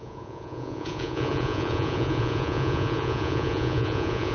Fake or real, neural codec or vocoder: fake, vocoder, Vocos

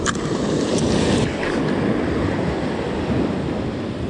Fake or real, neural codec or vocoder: real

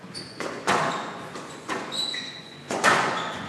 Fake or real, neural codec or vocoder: fake, vocoder, Vocos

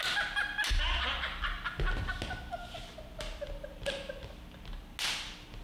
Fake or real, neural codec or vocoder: real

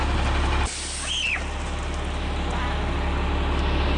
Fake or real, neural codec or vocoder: real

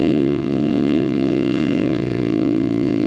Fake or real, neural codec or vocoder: fake, vocoder, WaveNeXt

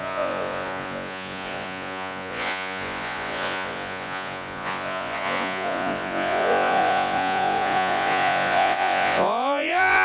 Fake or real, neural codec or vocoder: fake, vocoder, Vocos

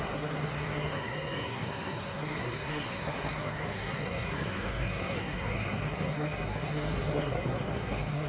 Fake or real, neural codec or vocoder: fake, codec, SNAC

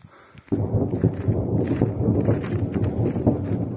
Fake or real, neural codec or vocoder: real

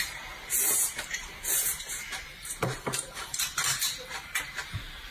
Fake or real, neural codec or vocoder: fake, vocoder, BigVGAN v2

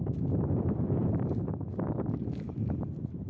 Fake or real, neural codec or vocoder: real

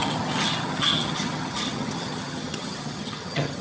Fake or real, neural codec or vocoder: fake, vocoder, HiFi-GAN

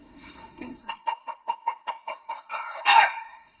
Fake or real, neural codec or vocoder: fake, codec, SNAC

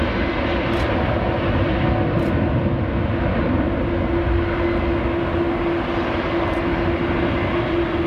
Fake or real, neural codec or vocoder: real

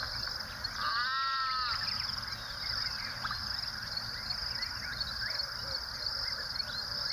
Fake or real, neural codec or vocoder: real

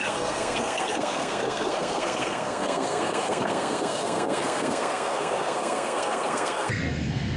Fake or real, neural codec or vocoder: fake, codec, SNAC